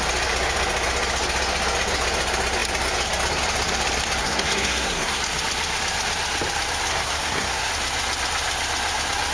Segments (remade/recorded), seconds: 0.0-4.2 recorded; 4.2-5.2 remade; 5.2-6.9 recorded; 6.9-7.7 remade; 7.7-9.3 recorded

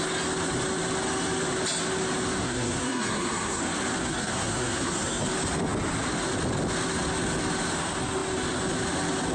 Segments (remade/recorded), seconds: 0.0-2.4 recorded; 2.4-3.6 remade; 3.6-4.0 recorded; 4.0-5.2 remade; 5.2-9.3 recorded

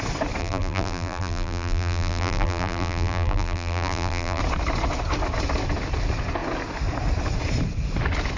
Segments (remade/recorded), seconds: 0.0-0.4 recorded; 0.4-4.4 remade; 4.4-8.4 recorded

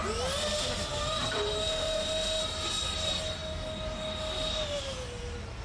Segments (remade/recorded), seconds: 0.0-1.6 recorded; 1.6-2.4 remade; 2.4-5.6 recorded